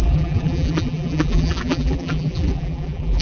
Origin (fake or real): fake